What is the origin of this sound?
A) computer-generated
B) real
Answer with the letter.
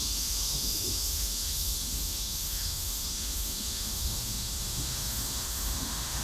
A